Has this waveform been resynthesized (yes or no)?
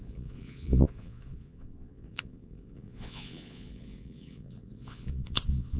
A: yes